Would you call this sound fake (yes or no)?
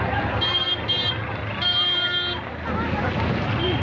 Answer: no